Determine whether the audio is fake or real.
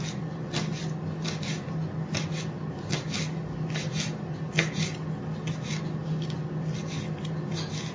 real